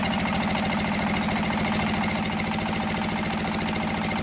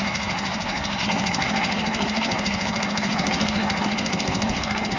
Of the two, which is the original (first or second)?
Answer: first